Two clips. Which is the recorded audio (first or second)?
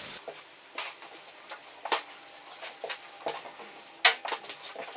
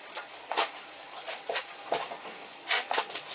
first